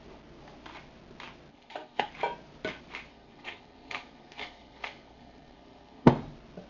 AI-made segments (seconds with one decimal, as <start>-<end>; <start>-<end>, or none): 1.5-2.1; 3.1-6.1